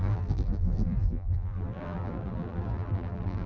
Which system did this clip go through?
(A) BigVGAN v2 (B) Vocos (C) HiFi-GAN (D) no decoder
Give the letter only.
A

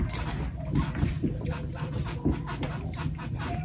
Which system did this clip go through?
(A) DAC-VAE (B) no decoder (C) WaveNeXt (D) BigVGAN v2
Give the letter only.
B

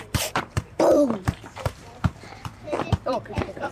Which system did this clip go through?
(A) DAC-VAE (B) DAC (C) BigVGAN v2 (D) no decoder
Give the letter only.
C